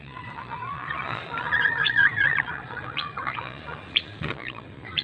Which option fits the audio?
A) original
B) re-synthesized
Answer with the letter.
B